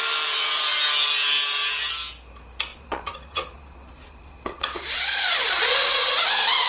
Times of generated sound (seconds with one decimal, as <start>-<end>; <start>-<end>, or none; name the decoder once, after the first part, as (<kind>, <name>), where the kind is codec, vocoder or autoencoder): 2.7-6.2 (vocoder, Vocos)